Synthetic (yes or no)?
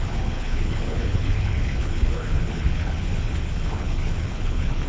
yes